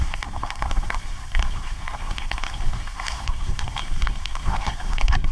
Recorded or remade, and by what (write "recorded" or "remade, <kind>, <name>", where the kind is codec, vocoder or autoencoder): remade, codec, SNAC